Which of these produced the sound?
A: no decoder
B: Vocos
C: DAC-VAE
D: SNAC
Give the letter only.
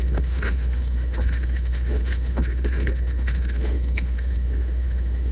C